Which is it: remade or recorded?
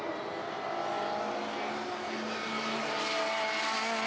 recorded